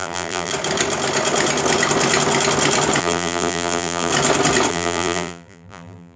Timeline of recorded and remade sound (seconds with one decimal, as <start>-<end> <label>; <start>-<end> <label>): 0.0-0.5 remade; 0.5-3.0 recorded; 3.0-4.1 remade; 4.1-4.7 recorded; 4.7-6.2 remade